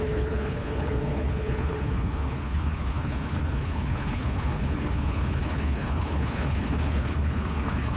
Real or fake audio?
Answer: fake